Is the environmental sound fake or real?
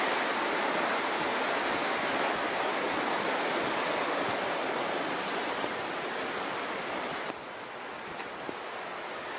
real